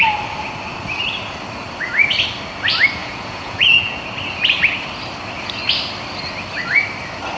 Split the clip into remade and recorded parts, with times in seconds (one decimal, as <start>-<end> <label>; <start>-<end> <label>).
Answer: 0.0-3.0 recorded; 3.0-4.0 remade; 4.0-7.4 recorded